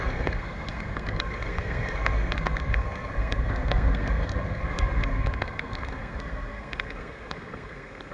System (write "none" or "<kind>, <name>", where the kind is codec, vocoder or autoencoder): codec, SNAC